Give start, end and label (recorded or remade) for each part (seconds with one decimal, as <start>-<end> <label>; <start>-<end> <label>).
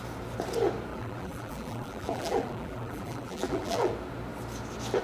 0.0-0.9 recorded; 0.9-3.9 remade; 3.9-5.0 recorded